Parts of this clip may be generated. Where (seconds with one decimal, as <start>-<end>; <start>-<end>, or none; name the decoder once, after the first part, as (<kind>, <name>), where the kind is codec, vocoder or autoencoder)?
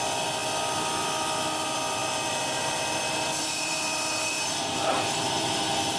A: 2.0-5.6 (vocoder, BigVGAN v2)